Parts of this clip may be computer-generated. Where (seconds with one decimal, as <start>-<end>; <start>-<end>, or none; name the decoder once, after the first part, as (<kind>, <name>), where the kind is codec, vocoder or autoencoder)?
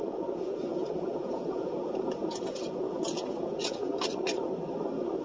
0.0-3.9 (vocoder, Vocos)